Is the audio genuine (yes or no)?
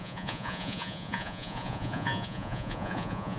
no